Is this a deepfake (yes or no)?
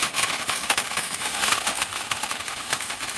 yes